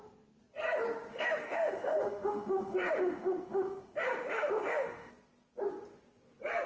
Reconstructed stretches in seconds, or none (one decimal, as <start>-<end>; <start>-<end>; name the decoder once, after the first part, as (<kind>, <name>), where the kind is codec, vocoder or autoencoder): 1.1-5.1 (autoencoder, DAC-VAE)